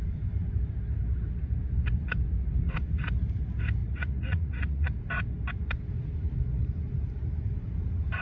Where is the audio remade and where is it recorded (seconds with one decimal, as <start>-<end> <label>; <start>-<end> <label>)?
0.0-3.8 recorded; 3.8-5.0 remade; 5.0-8.2 recorded